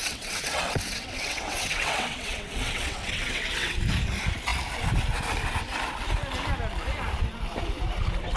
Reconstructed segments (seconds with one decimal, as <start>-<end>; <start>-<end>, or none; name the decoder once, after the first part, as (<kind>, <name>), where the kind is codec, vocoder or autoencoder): 0.0-3.8 (vocoder, WaveNeXt)